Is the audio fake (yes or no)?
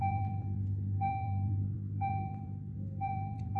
yes